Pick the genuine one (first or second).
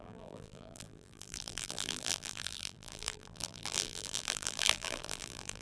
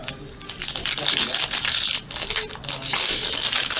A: second